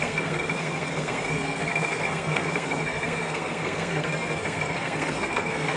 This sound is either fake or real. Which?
fake